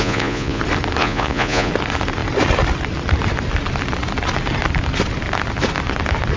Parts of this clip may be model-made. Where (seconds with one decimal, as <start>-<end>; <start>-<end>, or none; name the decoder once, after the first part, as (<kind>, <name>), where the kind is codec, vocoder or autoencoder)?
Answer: 0.0-0.6 (vocoder, Vocos); 1.0-1.7